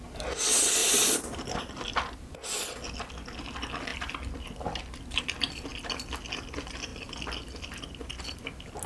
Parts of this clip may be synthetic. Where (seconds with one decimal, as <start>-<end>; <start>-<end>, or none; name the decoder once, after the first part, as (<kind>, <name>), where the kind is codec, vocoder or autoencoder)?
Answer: 0.8-1.6 (vocoder, BigVGAN v2)